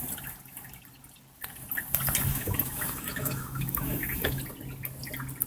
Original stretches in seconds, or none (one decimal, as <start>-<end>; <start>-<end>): 0.0-2.3; 4.4-5.5